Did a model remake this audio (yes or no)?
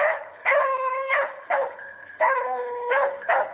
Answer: yes